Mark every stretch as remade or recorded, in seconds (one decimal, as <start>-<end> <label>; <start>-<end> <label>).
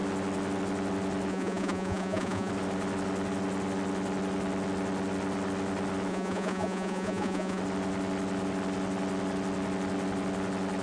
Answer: 0.0-1.3 recorded; 1.3-2.5 remade; 2.5-6.1 recorded; 6.1-7.6 remade; 7.6-10.8 recorded